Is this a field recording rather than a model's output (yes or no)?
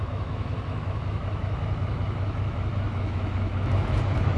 no